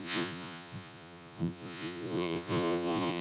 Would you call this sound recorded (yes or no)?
no